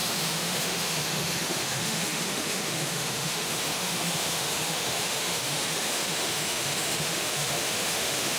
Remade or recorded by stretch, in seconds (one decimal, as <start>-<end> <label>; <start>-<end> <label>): 0.0-8.4 remade